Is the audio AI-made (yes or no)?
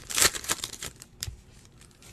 yes